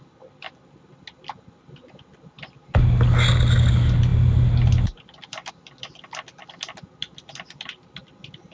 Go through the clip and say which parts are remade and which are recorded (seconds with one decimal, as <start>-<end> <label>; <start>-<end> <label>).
0.0-8.5 recorded